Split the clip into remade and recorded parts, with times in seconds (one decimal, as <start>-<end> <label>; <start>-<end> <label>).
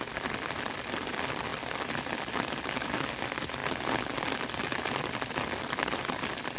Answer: 0.0-1.5 recorded; 1.5-2.3 remade; 2.3-6.6 recorded